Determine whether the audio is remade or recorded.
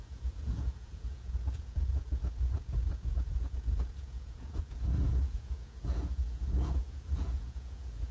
remade